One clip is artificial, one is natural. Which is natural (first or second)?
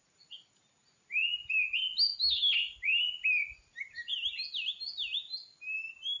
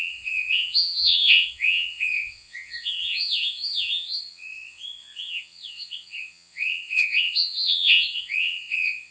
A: first